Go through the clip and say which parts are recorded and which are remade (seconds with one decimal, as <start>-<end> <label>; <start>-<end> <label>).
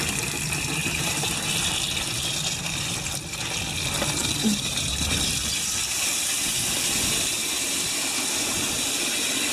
0.0-0.8 recorded; 0.8-1.5 remade; 1.5-4.2 recorded; 4.2-5.1 remade; 5.1-9.5 recorded